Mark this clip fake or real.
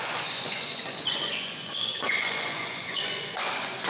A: fake